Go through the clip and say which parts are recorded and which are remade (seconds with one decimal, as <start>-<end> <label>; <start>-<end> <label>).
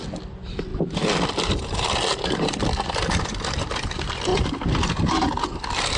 0.0-6.0 recorded